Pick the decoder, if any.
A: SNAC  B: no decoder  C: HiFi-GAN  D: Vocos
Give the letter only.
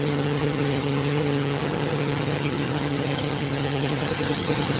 C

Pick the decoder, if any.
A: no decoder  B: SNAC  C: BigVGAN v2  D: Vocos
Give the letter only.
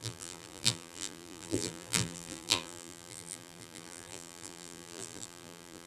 C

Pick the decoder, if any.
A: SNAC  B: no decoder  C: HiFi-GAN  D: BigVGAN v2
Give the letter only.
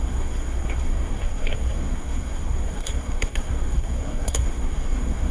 A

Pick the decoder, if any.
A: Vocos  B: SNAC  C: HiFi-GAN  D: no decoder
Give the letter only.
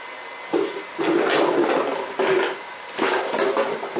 D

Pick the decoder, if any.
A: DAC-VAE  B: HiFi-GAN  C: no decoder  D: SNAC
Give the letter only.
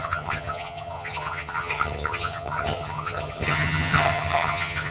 B